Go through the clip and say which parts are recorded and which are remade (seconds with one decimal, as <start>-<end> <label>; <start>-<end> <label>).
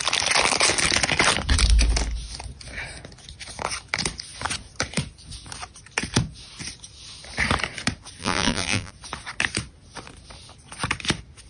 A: 0.0-8.2 recorded; 8.2-8.9 remade; 8.9-11.5 recorded